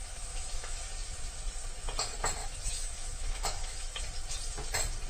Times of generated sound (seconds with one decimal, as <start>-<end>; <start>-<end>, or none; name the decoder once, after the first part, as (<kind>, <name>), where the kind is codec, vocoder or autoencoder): 0.0-0.8 (autoencoder, DAC-VAE); 2.4-4.0